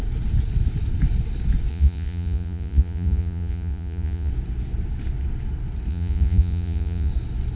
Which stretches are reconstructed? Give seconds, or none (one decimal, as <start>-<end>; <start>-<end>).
1.7-4.3; 5.9-7.1